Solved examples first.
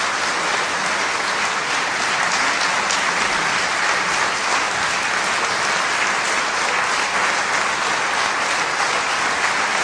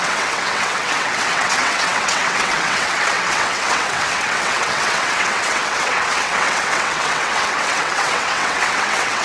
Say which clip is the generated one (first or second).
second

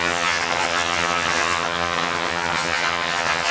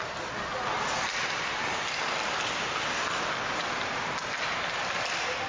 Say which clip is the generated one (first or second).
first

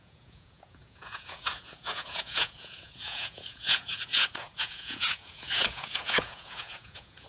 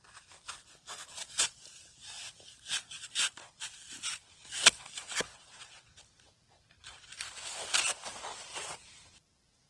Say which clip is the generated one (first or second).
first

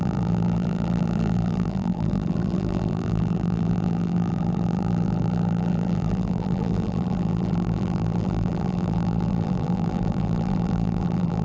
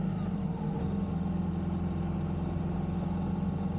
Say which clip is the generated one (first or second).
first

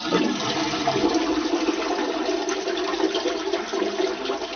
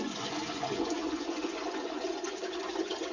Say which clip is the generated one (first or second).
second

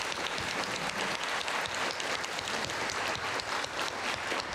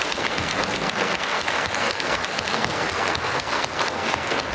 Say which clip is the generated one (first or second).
second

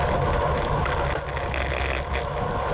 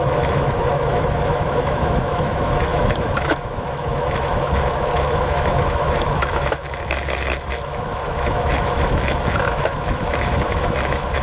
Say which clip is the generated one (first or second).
second